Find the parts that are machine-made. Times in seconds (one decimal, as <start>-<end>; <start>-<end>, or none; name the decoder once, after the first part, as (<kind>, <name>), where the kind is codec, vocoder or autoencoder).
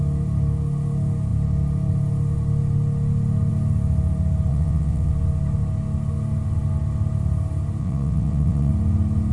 4.5-5.1 (vocoder, WaveNeXt); 7.8-8.7